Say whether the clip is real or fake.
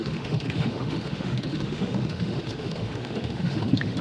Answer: fake